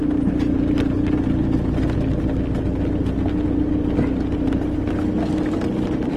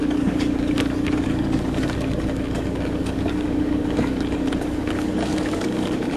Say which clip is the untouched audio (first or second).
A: first